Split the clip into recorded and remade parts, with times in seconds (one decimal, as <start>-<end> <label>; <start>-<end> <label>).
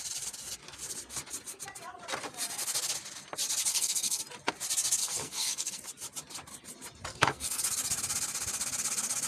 0.0-3.7 recorded; 3.7-4.2 remade; 4.2-5.0 recorded; 5.0-5.8 remade; 5.8-7.1 recorded; 7.1-7.6 remade; 7.6-9.3 recorded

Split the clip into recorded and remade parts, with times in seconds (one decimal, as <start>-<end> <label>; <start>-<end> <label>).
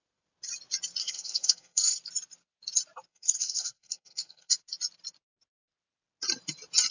0.0-1.0 recorded; 1.0-2.0 remade; 2.0-3.1 recorded; 3.1-4.5 remade; 4.5-6.9 recorded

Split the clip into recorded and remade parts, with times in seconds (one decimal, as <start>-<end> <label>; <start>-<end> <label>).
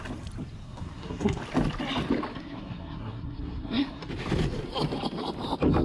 0.0-0.6 recorded; 0.6-1.4 remade; 1.4-2.3 recorded; 2.3-4.1 remade; 4.1-5.8 recorded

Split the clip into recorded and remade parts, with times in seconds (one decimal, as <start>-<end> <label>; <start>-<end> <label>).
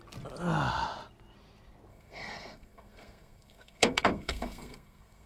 0.0-1.9 recorded; 1.9-5.3 remade